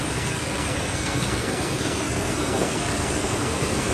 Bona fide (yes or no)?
no